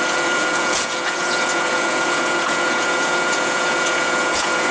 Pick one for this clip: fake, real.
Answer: fake